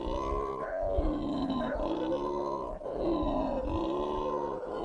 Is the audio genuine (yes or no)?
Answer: yes